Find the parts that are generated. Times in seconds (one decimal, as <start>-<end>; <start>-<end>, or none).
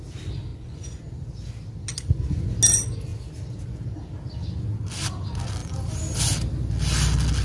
0.5-1.0